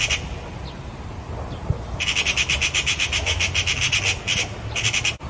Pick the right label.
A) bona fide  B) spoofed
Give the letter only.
A